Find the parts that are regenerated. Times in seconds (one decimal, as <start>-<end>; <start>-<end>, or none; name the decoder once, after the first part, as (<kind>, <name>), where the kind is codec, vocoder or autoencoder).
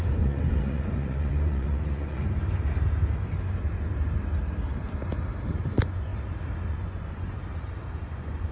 0.0-2.4 (vocoder, Vocos); 5.6-6.1; 6.7-7.4; 8.1-8.5